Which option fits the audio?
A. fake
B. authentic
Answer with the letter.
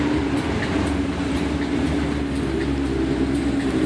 B